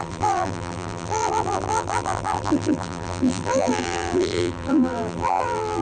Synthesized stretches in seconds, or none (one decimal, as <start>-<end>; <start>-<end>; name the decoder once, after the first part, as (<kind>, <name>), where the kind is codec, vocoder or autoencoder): 0.0-5.8 (vocoder, BigVGAN v2)